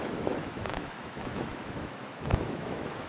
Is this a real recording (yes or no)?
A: no